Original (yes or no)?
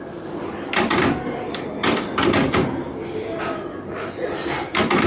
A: yes